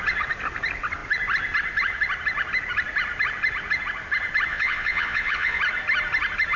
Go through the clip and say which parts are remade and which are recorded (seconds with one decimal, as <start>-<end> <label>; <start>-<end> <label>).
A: 0.0-4.5 recorded; 4.5-5.6 remade; 5.6-6.6 recorded